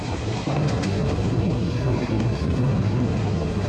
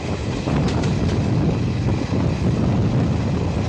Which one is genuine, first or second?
second